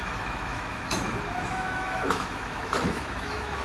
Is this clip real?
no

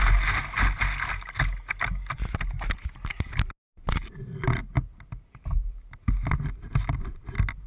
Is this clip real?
yes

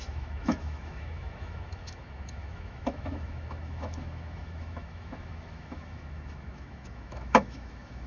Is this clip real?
no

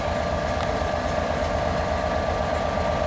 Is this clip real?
yes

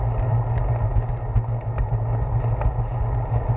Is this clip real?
yes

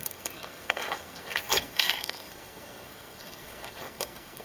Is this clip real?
no